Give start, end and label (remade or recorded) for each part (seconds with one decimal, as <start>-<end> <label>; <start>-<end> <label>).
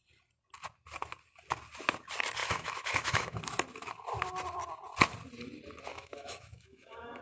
0.0-2.4 recorded; 2.4-3.4 remade; 3.4-5.9 recorded; 5.9-7.2 remade